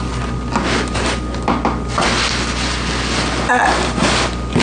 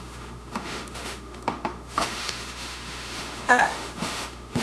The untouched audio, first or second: first